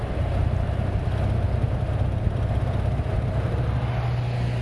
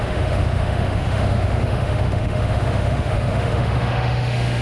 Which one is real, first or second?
first